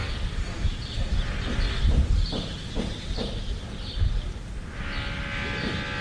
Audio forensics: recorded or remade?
recorded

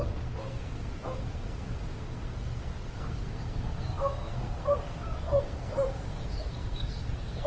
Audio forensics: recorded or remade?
remade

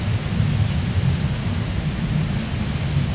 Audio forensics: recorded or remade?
recorded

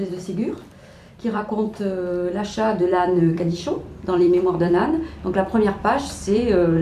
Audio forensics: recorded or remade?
remade